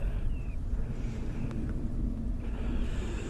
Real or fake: fake